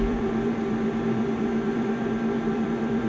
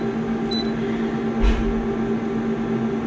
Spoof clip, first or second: first